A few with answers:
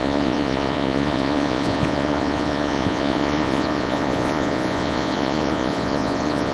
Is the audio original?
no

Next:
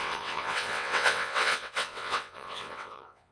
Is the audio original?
no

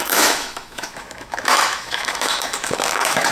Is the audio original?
no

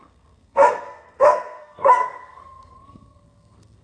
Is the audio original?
no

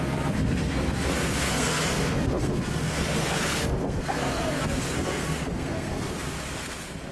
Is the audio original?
no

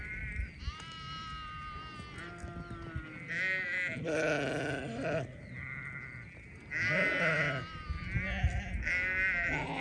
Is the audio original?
yes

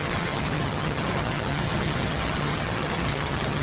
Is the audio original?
no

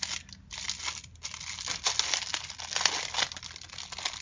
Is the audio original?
yes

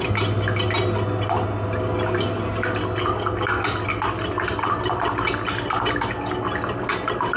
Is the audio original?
yes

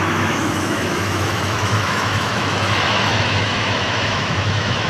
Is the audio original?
no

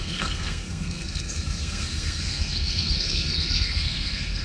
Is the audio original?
no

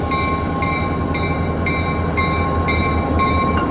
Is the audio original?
yes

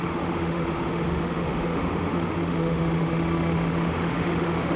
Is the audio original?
no